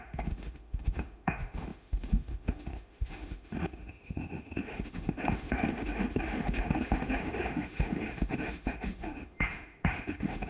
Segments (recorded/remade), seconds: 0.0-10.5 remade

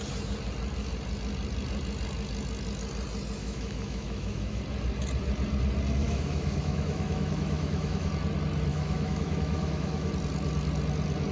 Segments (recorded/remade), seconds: 0.0-3.4 recorded; 3.4-4.6 remade; 4.6-6.0 recorded; 6.0-8.1 remade; 8.1-8.7 recorded; 8.7-10.1 remade; 10.1-11.3 recorded

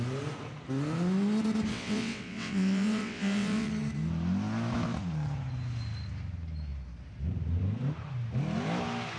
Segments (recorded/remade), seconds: 0.0-1.7 recorded; 1.7-3.7 remade; 3.7-9.2 recorded

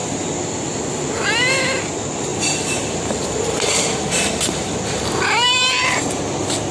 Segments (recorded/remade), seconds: 0.0-2.3 recorded; 2.3-5.8 remade; 5.8-6.7 recorded

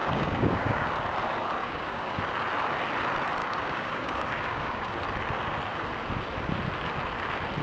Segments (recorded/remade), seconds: 0.0-0.9 remade; 0.9-1.6 recorded; 1.6-2.2 remade; 2.2-3.4 recorded; 3.4-4.9 remade; 4.9-7.6 recorded

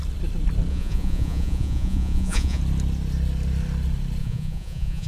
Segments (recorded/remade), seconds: 0.0-0.7 recorded; 0.7-2.6 remade; 2.6-4.2 recorded; 4.2-5.1 remade

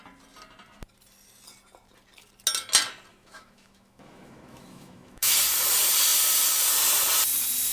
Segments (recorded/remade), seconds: 0.0-3.1 recorded; 3.1-5.4 remade; 5.4-7.7 recorded